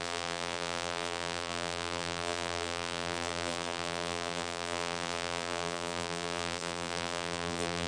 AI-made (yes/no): yes